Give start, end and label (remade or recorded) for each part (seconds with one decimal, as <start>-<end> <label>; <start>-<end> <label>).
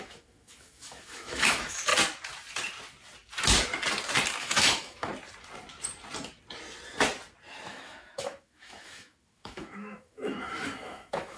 0.0-1.9 remade; 1.9-4.4 recorded; 4.4-5.1 remade; 5.1-7.7 recorded; 7.7-11.4 remade